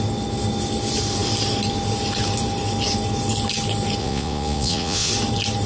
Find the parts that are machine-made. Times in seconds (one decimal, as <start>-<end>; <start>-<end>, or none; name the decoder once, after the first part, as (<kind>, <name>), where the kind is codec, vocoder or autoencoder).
4.0-5.1 (vocoder, Vocos)